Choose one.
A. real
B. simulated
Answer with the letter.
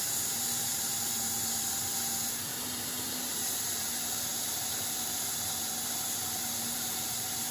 B